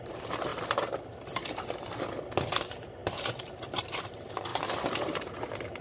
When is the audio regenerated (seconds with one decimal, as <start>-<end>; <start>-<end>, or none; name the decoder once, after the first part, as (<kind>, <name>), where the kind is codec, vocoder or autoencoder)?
0.0-0.5 (vocoder, BigVGAN v2); 2.5-5.8

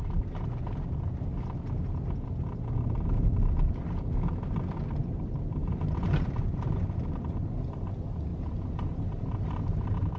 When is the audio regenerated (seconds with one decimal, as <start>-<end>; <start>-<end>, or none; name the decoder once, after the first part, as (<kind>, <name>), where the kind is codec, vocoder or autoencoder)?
8.3-10.2 (vocoder, BigVGAN v2)

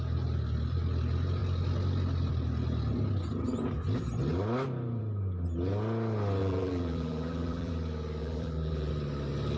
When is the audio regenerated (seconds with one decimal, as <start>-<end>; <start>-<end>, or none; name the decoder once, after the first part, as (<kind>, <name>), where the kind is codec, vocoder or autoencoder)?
6.4-7.7 (vocoder, BigVGAN v2); 8.2-8.9